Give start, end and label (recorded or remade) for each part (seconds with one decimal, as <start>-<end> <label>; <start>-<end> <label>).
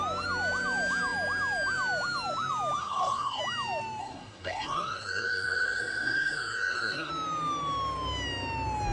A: 0.0-2.8 recorded; 2.8-3.4 remade; 3.4-4.0 recorded; 4.0-7.1 remade; 7.1-8.9 recorded